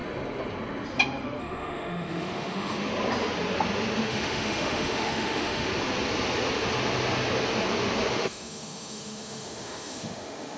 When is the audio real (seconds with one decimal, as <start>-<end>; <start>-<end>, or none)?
0.0-1.4; 2.9-4.0; 5.7-8.1